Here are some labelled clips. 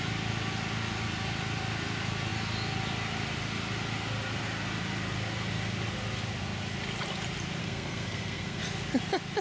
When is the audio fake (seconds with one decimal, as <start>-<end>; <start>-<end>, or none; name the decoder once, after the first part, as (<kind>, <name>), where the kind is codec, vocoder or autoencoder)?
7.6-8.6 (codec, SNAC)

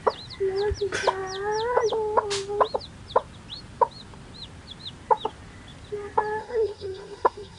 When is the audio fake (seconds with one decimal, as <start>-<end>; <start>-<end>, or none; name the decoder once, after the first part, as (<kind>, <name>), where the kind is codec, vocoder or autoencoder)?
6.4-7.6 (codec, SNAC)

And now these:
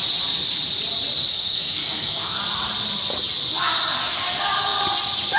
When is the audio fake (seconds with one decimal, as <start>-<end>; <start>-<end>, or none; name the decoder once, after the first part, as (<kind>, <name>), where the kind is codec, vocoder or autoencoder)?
1.3-2.4 (codec, SNAC)